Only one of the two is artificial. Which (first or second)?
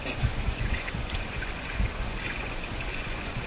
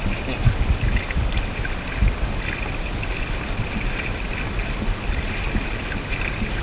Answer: first